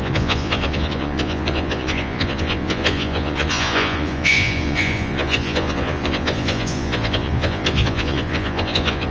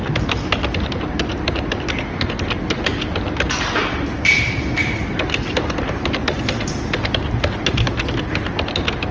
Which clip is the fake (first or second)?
first